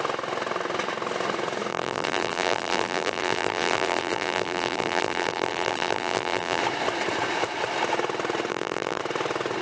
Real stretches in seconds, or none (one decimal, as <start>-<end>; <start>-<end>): 0.0-1.7; 6.6-8.5; 9.0-9.6